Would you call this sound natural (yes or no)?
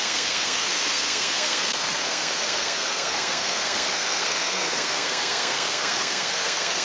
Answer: no